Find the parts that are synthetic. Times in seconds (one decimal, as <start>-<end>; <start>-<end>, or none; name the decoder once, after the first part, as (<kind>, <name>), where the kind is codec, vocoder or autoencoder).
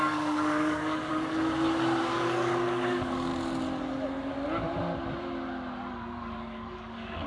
0.0-1.1 (codec, DAC); 2.0-3.3; 5.9-7.3